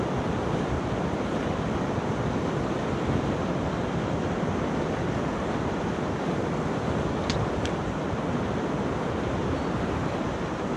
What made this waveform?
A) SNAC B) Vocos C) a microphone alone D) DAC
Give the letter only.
C